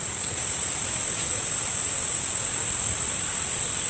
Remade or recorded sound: recorded